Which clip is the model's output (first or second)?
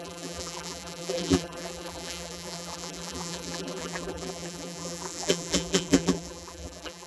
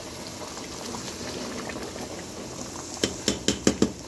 first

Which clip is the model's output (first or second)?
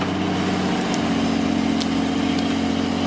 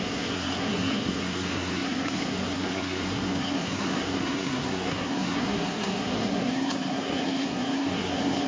second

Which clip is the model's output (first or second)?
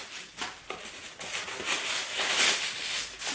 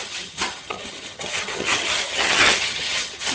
second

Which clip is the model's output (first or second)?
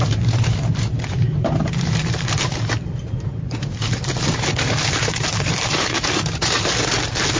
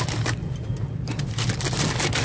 first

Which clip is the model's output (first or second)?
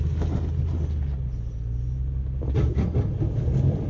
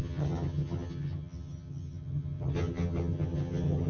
second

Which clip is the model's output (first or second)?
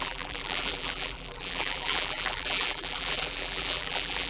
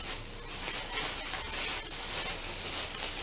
first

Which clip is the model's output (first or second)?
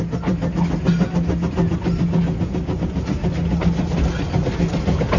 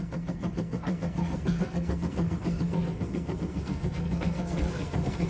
second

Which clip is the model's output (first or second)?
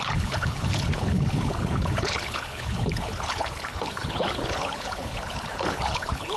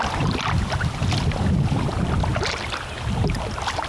first